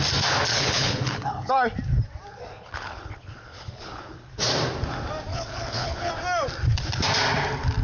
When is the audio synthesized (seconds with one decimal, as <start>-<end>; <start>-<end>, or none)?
0.5-1.5; 2.5-4.3; 5.3-6.1